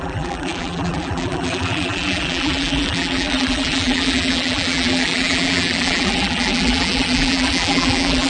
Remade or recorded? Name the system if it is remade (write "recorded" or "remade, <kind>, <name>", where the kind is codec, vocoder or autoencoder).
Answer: remade, vocoder, BigVGAN v2